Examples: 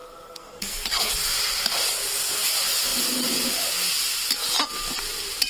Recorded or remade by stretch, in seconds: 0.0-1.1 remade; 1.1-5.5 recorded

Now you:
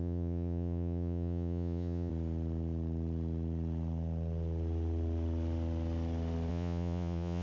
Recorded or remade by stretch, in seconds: 0.0-2.1 remade; 2.1-6.5 recorded; 6.5-7.4 remade

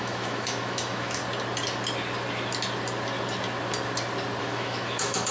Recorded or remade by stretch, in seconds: 0.0-1.2 remade; 1.2-4.4 recorded; 4.4-5.3 remade

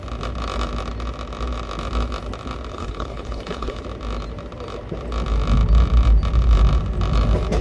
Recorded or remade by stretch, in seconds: 0.0-2.7 recorded; 2.7-3.8 remade; 3.8-7.6 recorded

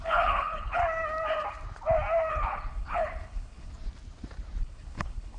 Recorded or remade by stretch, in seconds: 0.0-0.8 remade; 0.8-2.3 recorded; 2.3-3.7 remade; 3.7-4.6 recorded; 4.6-5.4 remade

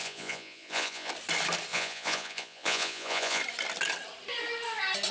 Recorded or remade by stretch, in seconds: 0.0-1.1 remade; 1.1-1.7 recorded; 1.7-3.4 remade; 3.4-5.1 recorded